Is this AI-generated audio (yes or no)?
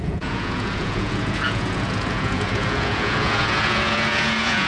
yes